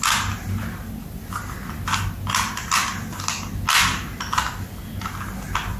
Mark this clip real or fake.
real